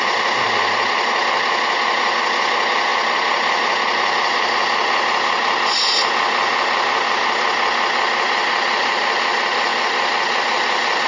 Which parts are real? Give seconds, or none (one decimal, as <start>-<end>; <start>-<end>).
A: 0.0-11.1